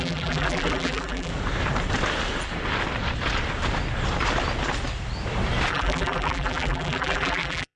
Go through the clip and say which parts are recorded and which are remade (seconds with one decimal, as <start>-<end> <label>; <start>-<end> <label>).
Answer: 0.0-1.3 remade; 1.3-5.7 recorded; 5.7-7.8 remade